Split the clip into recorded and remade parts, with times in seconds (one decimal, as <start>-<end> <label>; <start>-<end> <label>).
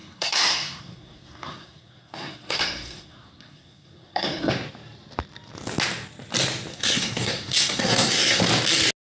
0.0-4.5 remade; 4.5-6.7 recorded; 6.7-8.4 remade; 8.4-9.0 recorded